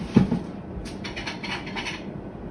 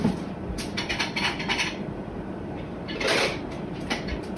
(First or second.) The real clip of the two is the first